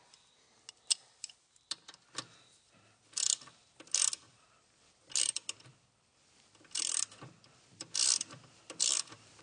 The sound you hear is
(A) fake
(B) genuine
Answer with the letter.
B